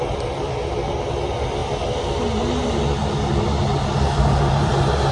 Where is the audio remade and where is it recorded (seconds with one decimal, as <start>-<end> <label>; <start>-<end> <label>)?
0.0-5.1 recorded